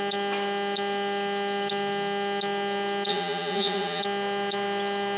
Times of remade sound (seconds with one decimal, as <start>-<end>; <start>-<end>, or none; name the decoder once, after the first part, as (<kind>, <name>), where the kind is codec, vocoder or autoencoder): 3.1-4.0 (vocoder, Vocos)